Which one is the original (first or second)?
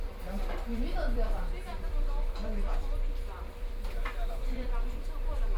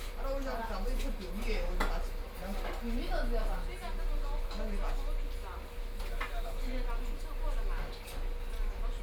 second